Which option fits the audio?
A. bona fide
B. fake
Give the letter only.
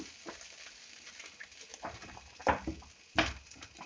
A